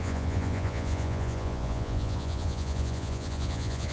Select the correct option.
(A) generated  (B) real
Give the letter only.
A